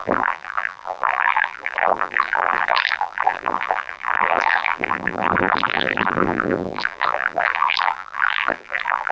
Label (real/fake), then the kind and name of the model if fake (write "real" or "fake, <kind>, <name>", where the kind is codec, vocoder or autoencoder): fake, vocoder, BigVGAN v2